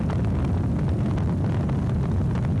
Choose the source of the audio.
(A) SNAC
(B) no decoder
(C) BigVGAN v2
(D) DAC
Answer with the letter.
B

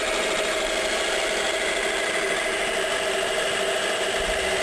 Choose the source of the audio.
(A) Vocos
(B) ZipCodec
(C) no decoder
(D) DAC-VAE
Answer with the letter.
C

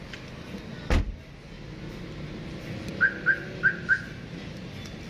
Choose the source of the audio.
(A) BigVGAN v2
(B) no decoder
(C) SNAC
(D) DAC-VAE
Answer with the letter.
B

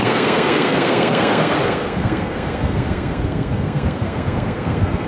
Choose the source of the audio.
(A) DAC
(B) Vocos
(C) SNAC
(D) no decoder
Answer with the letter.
C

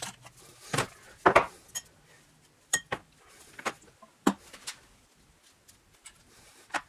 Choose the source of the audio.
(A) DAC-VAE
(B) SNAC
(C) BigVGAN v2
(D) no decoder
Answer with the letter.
D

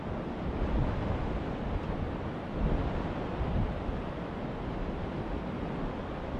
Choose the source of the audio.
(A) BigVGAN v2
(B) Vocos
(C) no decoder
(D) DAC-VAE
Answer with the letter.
A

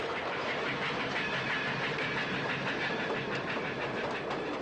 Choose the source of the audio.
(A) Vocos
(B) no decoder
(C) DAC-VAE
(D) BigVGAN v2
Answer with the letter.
B